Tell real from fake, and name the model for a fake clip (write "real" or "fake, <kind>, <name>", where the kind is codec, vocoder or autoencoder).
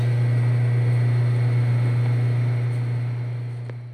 real